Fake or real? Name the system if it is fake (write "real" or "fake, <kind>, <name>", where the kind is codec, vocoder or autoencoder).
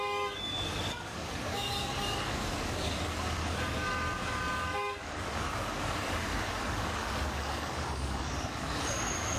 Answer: fake, codec, DAC